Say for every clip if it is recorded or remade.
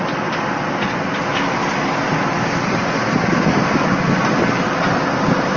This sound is recorded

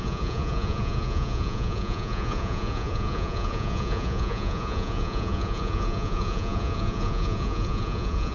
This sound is remade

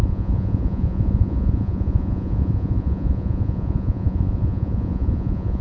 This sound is remade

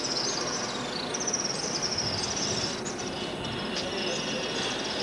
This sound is recorded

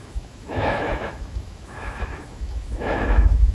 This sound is remade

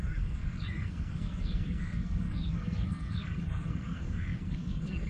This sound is remade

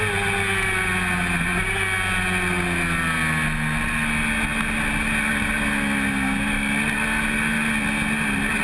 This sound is recorded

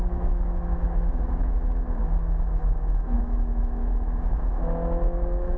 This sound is remade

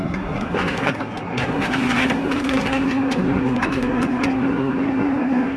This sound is remade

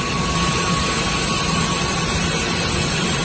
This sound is recorded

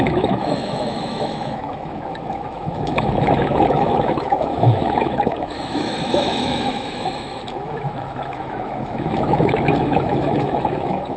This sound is remade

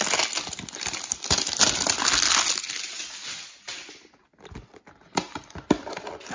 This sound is recorded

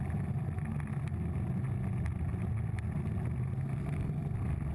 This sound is recorded